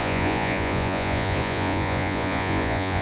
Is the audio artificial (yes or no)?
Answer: yes